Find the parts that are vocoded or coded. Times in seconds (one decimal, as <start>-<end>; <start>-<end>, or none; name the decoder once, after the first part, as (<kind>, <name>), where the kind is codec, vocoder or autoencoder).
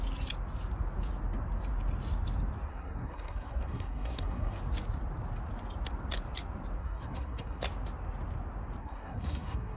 2.7-4.6 (codec, SNAC); 6.8-7.6; 8.8-9.8